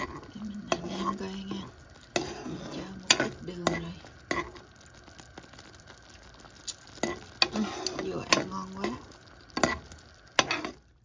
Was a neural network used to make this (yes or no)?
no